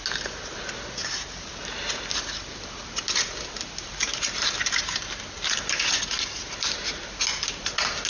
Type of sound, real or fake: real